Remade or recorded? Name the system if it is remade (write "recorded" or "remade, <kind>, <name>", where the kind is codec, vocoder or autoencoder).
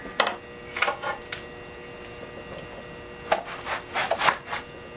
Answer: recorded